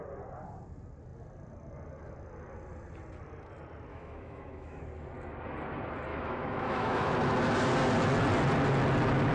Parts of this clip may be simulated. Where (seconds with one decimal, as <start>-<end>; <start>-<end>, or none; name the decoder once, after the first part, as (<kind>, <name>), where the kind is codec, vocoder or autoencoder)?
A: 3.9-4.8 (autoencoder, DAC-VAE); 6.1-7.1